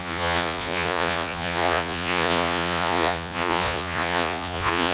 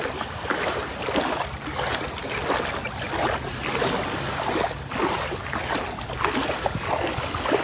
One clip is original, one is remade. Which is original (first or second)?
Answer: second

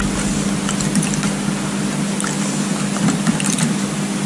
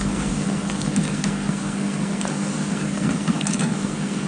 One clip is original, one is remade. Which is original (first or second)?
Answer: first